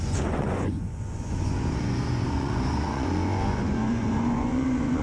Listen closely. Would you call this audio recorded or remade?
remade